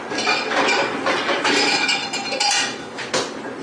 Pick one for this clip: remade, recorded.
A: recorded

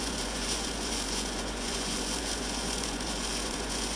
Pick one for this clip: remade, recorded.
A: remade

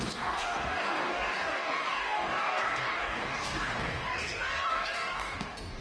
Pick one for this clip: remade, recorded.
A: remade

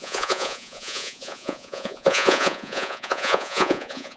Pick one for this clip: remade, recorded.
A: remade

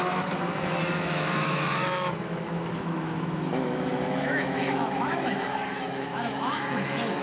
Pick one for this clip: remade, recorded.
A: remade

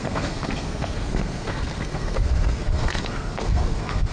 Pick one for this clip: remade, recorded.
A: remade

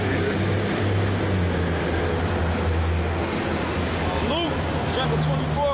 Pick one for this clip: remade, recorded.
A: recorded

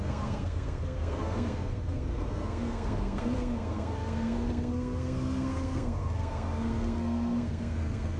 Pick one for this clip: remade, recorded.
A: remade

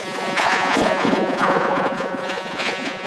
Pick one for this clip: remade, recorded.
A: remade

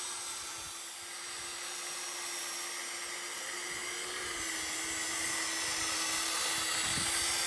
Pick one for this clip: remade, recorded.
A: recorded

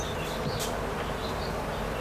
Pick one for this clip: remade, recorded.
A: recorded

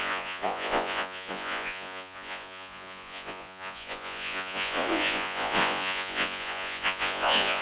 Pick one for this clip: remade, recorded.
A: remade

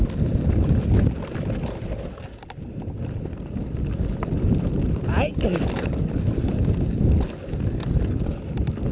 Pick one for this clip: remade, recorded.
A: recorded